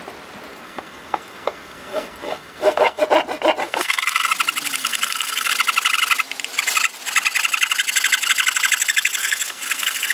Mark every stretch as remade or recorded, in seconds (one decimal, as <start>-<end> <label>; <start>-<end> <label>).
0.0-0.5 recorded; 0.5-3.0 remade; 3.0-3.6 recorded; 3.6-4.3 remade; 4.3-4.8 recorded; 4.8-5.5 remade; 5.5-9.2 recorded; 9.2-10.1 remade